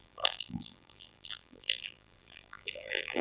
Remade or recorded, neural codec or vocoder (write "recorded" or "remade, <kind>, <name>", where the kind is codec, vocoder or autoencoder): remade, vocoder, BigVGAN v2